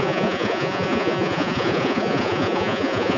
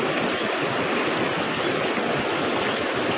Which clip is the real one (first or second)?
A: second